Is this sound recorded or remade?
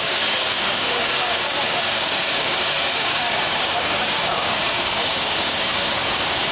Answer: remade